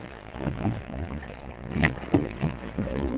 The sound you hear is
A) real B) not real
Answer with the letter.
B